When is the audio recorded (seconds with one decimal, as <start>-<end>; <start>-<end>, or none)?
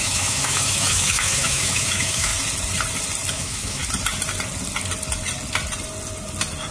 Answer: 2.3-3.3; 3.8-6.7